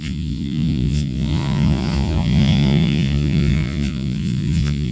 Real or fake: fake